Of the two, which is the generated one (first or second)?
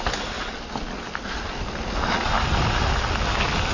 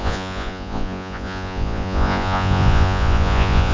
second